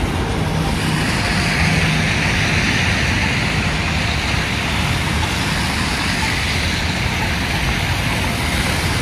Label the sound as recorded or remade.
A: recorded